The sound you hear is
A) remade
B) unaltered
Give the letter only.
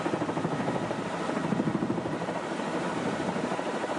A